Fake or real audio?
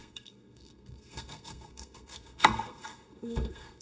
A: fake